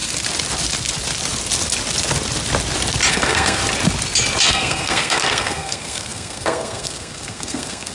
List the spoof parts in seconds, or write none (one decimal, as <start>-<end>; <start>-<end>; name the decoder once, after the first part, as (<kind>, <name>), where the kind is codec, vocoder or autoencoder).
3.1-3.6 (codec, SNAC); 4.5-7.9